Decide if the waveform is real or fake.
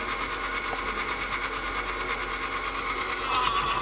real